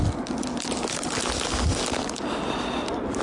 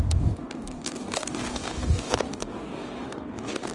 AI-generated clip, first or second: second